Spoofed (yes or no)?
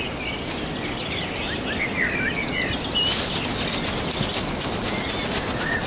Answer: no